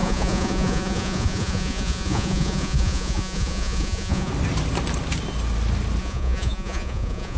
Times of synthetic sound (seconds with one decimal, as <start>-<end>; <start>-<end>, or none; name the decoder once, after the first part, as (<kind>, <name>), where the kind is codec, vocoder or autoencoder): 0.0-4.3 (vocoder, Vocos); 6.0-7.4